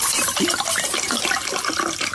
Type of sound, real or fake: real